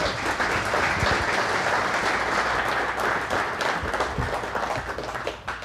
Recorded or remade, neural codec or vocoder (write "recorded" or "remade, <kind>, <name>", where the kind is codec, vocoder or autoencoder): recorded